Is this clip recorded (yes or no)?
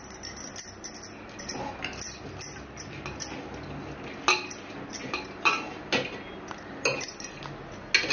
yes